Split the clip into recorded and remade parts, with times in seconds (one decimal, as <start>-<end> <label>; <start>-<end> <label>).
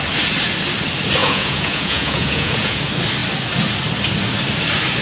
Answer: 0.0-1.2 recorded; 1.2-2.8 remade; 2.8-5.0 recorded